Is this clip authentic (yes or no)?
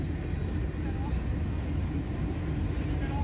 yes